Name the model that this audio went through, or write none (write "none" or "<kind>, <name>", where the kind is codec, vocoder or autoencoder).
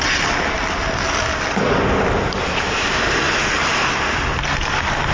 none